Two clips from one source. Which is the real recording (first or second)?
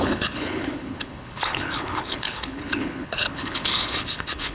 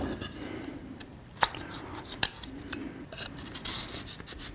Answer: second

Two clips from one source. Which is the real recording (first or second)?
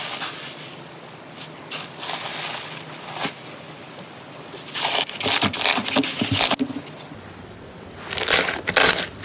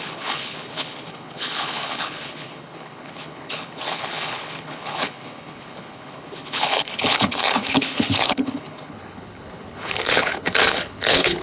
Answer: first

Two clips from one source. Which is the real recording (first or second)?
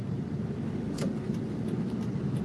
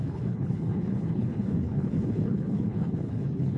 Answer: first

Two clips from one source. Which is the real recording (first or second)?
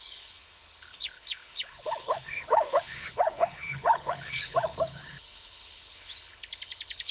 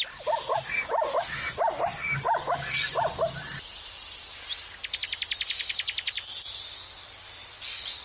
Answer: second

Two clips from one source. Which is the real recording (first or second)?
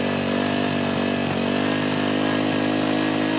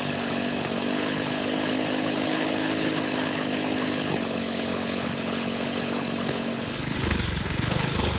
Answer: first